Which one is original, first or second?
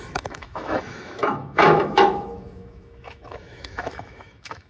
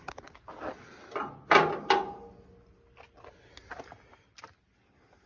second